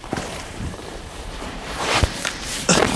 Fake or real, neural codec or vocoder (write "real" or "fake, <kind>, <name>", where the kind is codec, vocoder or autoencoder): fake, vocoder, BigVGAN v2